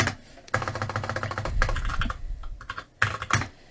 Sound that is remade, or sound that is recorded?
recorded